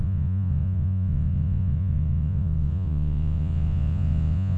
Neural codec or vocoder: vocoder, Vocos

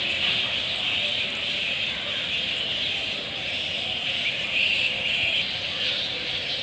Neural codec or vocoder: none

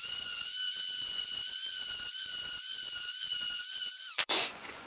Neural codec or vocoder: vocoder, Vocos